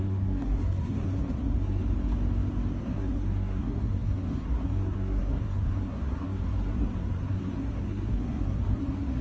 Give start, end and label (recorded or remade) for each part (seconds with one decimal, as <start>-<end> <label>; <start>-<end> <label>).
0.0-1.8 remade; 1.8-2.8 recorded; 2.8-9.2 remade